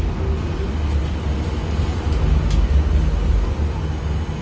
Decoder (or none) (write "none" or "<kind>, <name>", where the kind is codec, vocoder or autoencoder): none